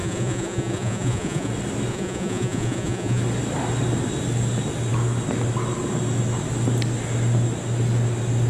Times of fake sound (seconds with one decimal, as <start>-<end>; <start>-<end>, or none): 0.0-1.5; 1.9-3.2